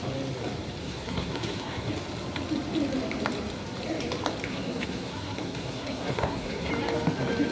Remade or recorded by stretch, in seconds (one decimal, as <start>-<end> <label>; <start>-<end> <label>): 0.0-0.8 recorded; 0.8-1.9 remade; 1.9-4.5 recorded; 4.5-6.7 remade; 6.7-7.5 recorded